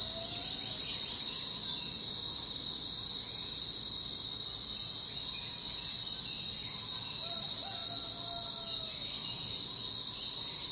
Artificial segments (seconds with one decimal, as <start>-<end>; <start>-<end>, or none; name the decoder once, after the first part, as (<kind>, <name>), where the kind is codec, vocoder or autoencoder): none